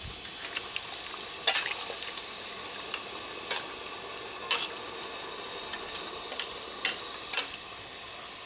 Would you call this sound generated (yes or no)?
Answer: no